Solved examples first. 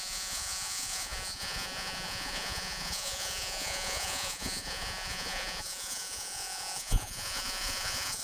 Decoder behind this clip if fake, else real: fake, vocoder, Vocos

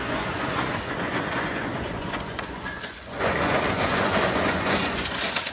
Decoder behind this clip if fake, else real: fake, vocoder, Vocos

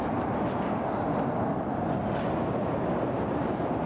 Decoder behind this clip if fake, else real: real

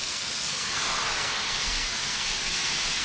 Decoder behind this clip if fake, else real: fake, codec, SNAC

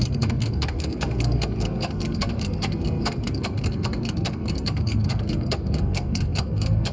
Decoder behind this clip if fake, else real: fake, codec, SNAC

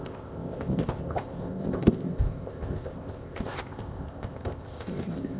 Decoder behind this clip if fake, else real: fake, codec, ZipCodec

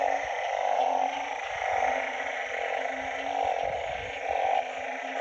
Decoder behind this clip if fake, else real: real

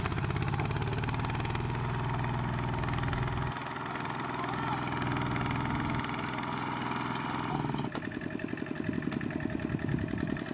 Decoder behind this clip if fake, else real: real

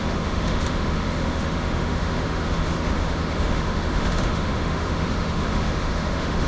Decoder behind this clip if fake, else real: fake, autoencoder, DAC-VAE